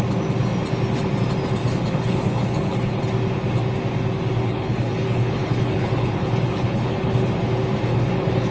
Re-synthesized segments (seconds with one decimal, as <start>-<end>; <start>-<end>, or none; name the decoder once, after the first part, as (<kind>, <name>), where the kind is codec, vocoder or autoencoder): 1.6-3.0 (codec, HILCodec); 4.4-7.3; 7.9-8.5